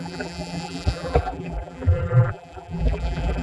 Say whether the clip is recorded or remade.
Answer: remade